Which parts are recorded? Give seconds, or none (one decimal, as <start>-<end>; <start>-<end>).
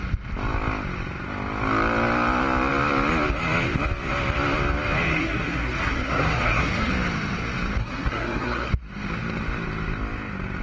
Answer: 0.0-5.1; 6.9-7.8; 8.7-10.6